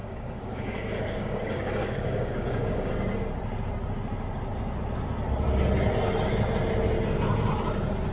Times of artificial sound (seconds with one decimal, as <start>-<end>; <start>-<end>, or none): 0.0-2.9